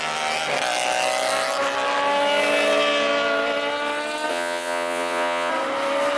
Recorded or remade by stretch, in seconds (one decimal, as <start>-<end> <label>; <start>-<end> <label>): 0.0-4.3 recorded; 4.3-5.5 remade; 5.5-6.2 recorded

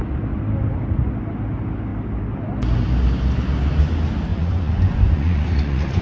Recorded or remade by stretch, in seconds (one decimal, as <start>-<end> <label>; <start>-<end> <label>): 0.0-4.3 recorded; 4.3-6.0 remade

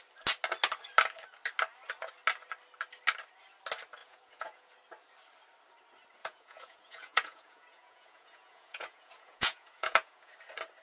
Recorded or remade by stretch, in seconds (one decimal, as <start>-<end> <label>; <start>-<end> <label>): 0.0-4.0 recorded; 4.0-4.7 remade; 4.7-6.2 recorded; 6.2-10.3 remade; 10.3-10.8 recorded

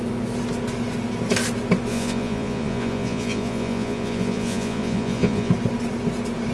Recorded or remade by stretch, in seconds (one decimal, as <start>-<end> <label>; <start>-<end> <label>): 0.0-1.9 recorded; 1.9-5.5 remade; 5.5-6.5 recorded